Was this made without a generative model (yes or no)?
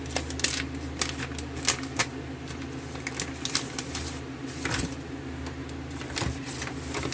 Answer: yes